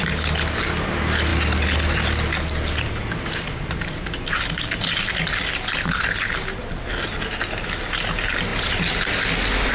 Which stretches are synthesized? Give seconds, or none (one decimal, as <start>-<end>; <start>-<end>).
none